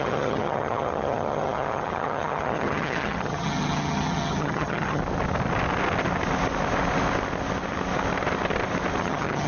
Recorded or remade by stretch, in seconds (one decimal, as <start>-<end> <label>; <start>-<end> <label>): 0.0-5.0 remade; 5.0-9.0 recorded; 9.0-9.5 remade